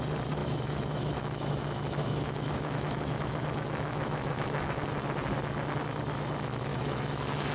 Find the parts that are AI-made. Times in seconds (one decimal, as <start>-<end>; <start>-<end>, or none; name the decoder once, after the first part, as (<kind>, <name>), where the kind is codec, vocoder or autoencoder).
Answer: 0.4-4.9 (autoencoder, DAC-VAE); 6.7-7.5

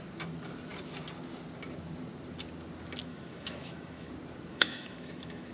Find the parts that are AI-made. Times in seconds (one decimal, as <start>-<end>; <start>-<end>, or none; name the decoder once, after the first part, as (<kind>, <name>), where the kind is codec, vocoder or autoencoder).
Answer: 3.1-4.1 (autoencoder, DAC-VAE); 4.5-5.5

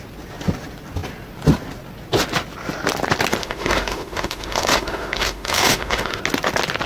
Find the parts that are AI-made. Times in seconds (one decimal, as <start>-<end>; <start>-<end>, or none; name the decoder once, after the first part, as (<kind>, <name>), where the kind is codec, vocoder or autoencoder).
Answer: 3.4-6.2 (autoencoder, DAC-VAE)

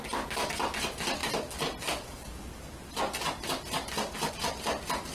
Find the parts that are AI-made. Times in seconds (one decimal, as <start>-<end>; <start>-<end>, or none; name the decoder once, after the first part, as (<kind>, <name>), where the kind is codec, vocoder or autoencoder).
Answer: none

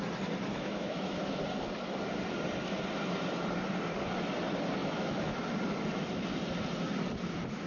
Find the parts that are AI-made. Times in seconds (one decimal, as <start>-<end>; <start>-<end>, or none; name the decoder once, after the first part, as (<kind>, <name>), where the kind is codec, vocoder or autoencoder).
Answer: 0.5-1.4 (autoencoder, DAC-VAE); 4.8-5.4

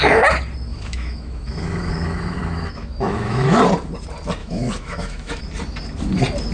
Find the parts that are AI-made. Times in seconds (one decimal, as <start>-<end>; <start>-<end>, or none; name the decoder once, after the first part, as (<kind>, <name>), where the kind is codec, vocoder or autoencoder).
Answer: 0.7-3.6 (autoencoder, DAC-VAE); 4.4-5.4

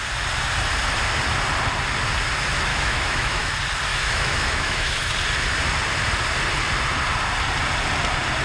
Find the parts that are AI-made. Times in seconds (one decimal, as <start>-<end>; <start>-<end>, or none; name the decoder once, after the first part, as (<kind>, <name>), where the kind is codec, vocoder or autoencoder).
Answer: 2.7-3.5 (autoencoder, DAC-VAE); 3.9-5.1